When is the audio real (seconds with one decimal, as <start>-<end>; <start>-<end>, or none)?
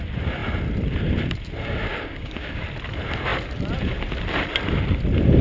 0.0-1.9; 2.6-5.4